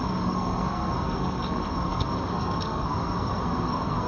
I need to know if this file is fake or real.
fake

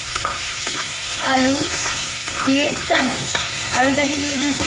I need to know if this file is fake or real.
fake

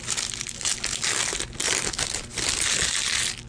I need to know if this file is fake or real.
real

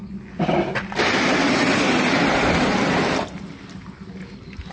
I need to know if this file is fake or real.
real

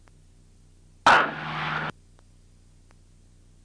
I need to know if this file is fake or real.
real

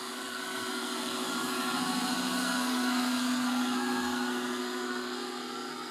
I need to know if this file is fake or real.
fake